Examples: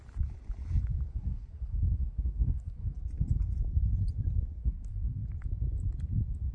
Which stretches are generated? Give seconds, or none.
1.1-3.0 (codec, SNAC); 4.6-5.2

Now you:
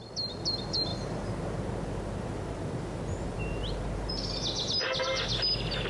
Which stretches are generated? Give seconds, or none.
0.9-4.1 (vocoder, BigVGAN v2)

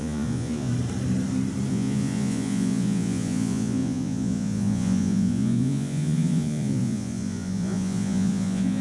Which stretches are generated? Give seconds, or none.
0.0-0.7 (vocoder, Vocos); 1.7-8.8

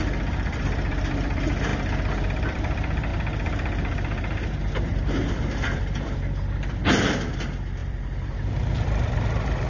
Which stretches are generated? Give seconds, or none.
0.0-6.8 (vocoder, BigVGAN v2); 7.3-9.7

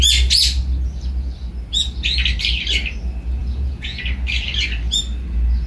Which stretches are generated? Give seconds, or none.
3.4-4.0 (vocoder, Vocos)

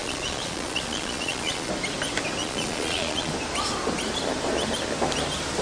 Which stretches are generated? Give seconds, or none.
0.0-1.7 (vocoder, Vocos); 2.4-3.3

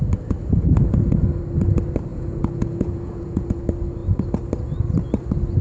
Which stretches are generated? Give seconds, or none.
0.4-1.4 (vocoder, Vocos); 2.1-3.4